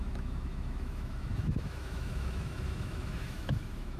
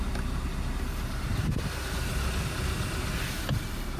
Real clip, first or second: second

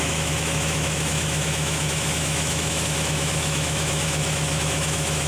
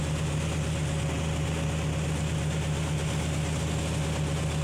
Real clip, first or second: second